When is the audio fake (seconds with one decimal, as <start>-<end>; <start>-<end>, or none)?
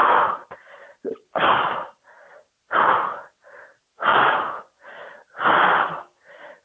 4.1-4.9